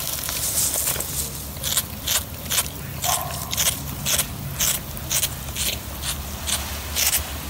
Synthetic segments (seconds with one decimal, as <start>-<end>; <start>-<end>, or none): none